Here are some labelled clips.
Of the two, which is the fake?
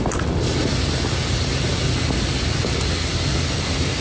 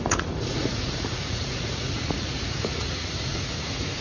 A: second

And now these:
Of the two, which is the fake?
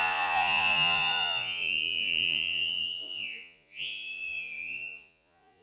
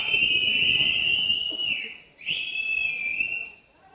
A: first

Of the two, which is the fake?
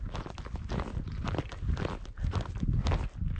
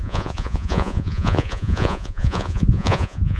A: second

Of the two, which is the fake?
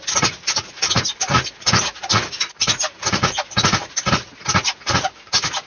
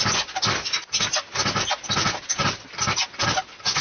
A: first